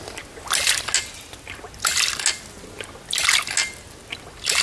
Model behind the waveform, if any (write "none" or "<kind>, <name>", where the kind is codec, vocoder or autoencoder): none